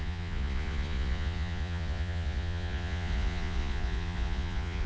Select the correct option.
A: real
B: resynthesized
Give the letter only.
B